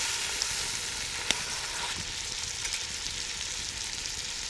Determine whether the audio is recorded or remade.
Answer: recorded